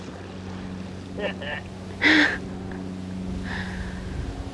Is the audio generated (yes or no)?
no